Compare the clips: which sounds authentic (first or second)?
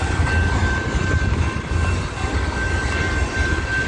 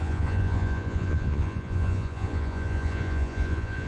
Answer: first